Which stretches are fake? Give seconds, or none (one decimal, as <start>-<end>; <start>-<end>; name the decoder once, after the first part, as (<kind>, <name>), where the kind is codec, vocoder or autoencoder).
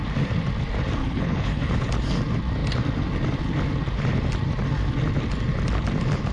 1.0-1.9 (codec, HILCodec)